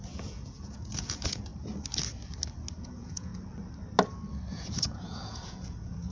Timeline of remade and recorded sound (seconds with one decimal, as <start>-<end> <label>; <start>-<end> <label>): 0.0-1.5 remade; 1.5-2.8 recorded; 2.8-3.3 remade; 3.3-4.5 recorded; 4.5-6.1 remade